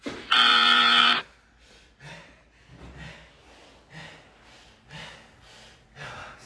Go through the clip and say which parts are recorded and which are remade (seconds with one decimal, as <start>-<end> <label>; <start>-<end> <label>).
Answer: 0.0-0.5 recorded; 0.5-1.1 remade; 1.1-6.5 recorded